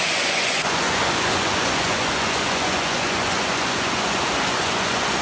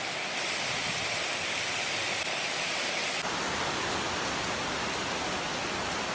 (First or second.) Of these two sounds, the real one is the second